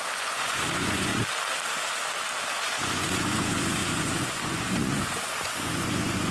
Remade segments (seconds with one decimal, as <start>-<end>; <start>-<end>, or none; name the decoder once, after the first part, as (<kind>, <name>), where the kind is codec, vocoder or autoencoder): 0.0-1.1 (vocoder, Vocos); 2.5-6.3